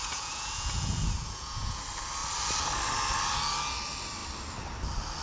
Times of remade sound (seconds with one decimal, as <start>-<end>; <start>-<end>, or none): 0.0-1.8